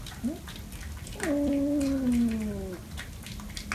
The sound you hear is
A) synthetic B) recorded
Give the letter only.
B